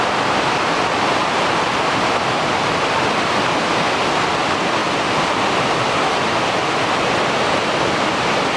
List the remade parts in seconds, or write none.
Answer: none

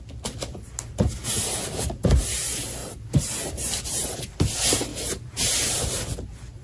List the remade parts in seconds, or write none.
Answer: 2.8-4.2 (vocoder, BigVGAN v2); 4.9-6.0

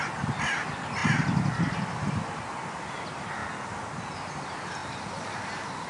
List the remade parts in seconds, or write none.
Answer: none

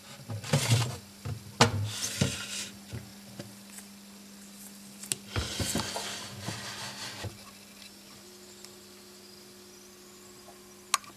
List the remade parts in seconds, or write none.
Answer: none

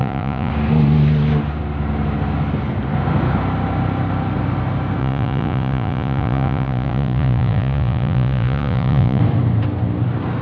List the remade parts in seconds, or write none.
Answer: 0.0-0.5 (vocoder, Vocos); 5.0-9.2